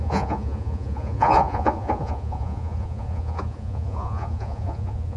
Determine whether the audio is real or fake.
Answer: fake